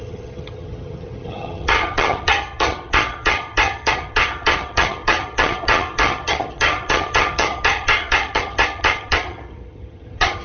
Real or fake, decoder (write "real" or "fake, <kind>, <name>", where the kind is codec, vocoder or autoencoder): fake, vocoder, HiFi-GAN